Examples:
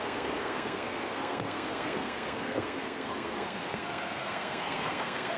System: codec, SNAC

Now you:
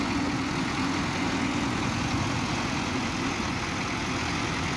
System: vocoder, Vocos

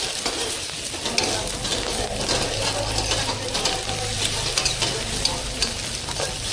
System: none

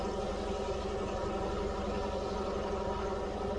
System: none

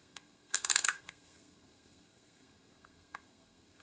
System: codec, SNAC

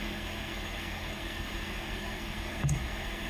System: codec, SNAC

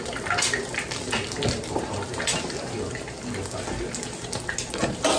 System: none